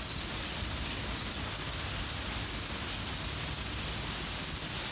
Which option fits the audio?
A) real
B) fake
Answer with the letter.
A